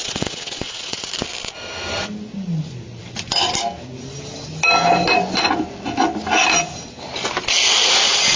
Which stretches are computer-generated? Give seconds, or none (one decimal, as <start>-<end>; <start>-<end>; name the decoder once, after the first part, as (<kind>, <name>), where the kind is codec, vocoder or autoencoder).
0.0-1.1 (vocoder, WaveNeXt)